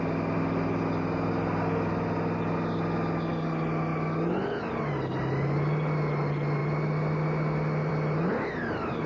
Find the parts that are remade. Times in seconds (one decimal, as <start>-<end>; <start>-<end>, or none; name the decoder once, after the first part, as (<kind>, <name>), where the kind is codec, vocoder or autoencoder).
none